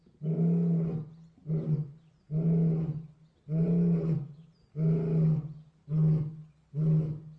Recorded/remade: recorded